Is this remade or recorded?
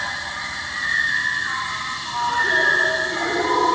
recorded